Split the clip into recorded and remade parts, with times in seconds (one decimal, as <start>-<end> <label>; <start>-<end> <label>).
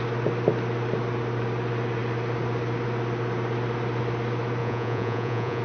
0.0-4.6 recorded; 4.6-5.6 remade